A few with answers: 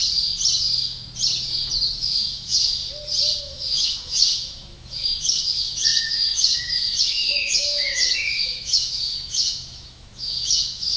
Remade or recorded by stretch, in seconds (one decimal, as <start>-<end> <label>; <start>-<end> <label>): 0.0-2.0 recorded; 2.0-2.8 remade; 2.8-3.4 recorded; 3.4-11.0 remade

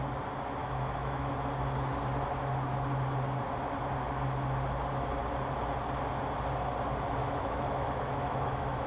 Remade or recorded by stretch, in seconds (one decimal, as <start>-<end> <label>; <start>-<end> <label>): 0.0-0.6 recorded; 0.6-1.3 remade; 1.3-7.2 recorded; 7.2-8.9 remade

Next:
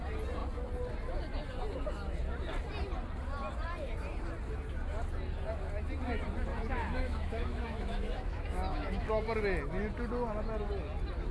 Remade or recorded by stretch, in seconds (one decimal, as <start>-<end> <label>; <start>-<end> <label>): 0.0-6.5 recorded; 6.5-9.4 remade; 9.4-11.3 recorded